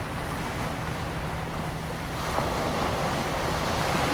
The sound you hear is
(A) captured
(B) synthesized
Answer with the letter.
A